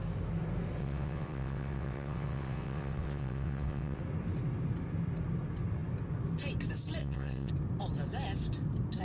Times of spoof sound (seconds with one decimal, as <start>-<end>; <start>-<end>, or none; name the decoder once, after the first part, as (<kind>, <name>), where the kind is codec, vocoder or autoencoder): 0.8-4.0 (vocoder, WaveNeXt); 7.0-7.5